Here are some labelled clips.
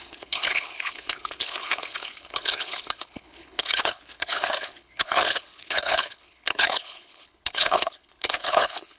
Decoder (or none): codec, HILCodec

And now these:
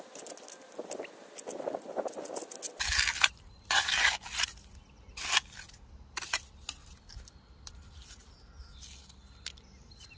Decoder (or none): none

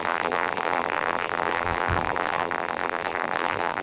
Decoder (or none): vocoder, BigVGAN v2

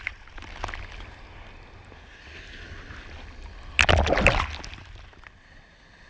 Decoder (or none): none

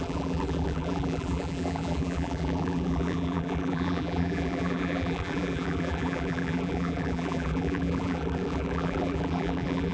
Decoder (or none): vocoder, BigVGAN v2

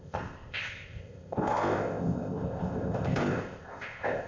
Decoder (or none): codec, ZipCodec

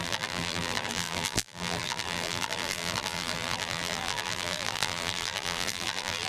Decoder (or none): vocoder, BigVGAN v2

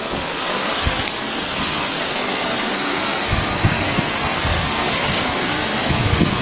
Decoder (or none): codec, SNAC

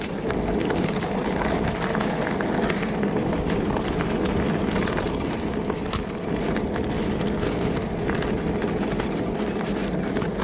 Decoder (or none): none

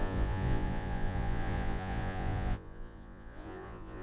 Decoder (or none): vocoder, Vocos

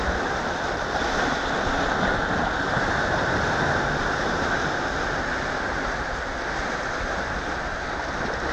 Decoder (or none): none